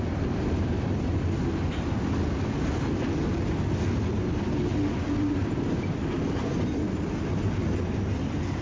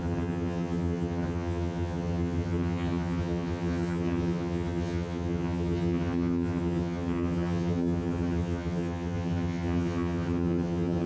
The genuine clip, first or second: first